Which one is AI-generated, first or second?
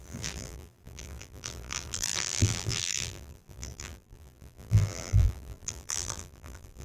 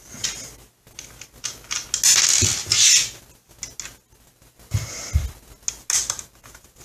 first